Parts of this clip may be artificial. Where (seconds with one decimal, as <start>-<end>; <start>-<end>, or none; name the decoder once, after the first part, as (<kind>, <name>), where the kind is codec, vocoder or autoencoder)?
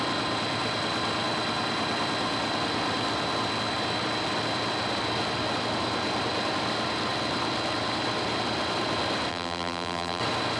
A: 9.3-10.2 (vocoder, BigVGAN v2)